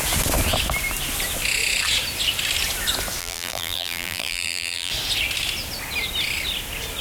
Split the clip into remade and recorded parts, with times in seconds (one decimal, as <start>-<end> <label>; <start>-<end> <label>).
0.0-3.2 recorded; 3.2-4.9 remade; 4.9-7.0 recorded